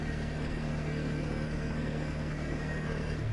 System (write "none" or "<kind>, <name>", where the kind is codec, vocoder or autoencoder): codec, SNAC